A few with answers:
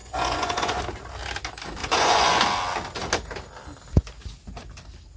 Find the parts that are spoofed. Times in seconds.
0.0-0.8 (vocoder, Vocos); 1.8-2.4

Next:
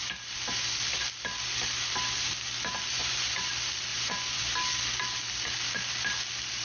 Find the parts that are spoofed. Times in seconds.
2.9-3.5 (vocoder, Vocos); 3.9-4.4

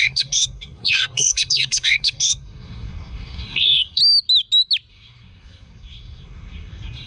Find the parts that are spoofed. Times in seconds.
0.0-4.0 (codec, SNAC); 4.9-7.1